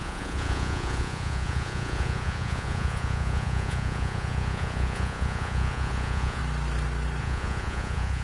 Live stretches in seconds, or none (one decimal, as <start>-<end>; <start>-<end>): 6.4-7.2